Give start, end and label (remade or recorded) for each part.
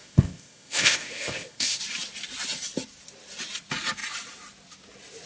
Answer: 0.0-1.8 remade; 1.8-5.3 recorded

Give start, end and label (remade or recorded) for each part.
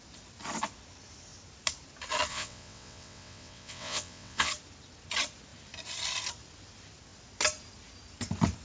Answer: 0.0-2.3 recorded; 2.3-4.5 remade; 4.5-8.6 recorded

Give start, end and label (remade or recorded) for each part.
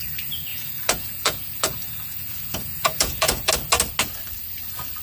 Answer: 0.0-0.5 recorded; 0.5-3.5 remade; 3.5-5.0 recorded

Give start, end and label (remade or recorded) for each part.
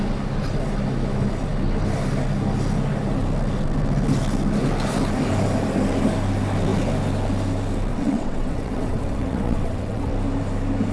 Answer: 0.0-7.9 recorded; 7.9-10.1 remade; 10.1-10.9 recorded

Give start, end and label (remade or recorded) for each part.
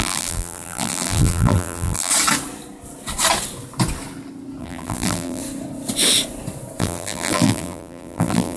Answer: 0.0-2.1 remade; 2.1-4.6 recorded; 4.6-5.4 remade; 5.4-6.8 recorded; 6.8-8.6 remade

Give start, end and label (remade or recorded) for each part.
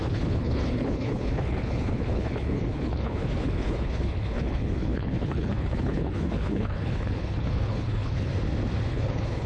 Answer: 0.0-8.3 remade; 8.3-8.9 recorded; 8.9-9.5 remade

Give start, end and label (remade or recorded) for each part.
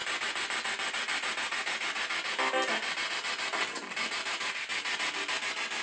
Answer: 0.0-5.8 recorded